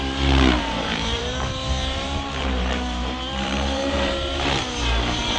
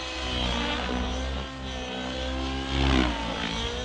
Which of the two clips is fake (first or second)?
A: first